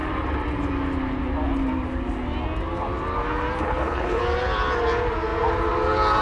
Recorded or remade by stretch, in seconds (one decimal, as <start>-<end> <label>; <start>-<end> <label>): 0.0-3.6 recorded; 3.6-4.2 remade; 4.2-6.2 recorded